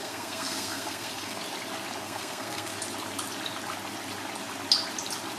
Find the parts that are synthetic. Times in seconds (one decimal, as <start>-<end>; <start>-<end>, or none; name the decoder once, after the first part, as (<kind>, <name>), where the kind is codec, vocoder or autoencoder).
0.0-1.4 (codec, SNAC); 2.0-2.7